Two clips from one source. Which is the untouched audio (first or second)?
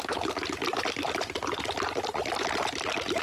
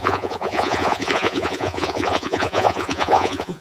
first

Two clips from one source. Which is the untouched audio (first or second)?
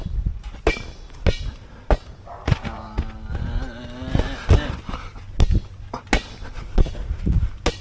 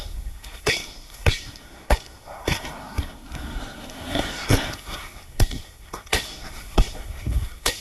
first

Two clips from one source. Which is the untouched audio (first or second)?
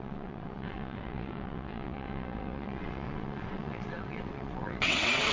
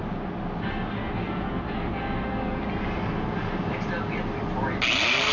second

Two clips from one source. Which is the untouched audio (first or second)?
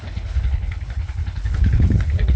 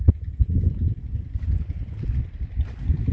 second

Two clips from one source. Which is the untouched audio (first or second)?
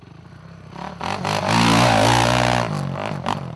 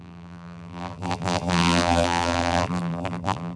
first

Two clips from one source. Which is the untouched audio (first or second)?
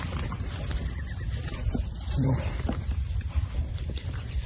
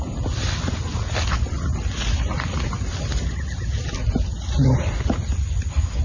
second